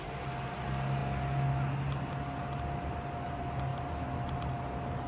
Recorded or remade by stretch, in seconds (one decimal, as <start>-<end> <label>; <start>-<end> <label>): 0.0-5.1 recorded